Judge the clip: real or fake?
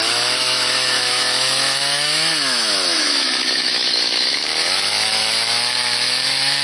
fake